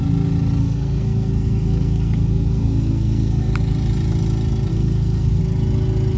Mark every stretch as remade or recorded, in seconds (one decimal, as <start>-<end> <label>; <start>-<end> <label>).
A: 0.0-0.6 recorded; 0.6-3.5 remade; 3.5-4.7 recorded; 4.7-5.4 remade; 5.4-6.2 recorded